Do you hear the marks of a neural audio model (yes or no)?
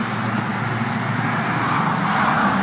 no